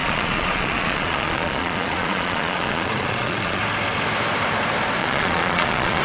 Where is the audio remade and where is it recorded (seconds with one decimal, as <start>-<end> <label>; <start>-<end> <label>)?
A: 0.0-3.6 remade; 3.6-5.0 recorded; 5.0-6.0 remade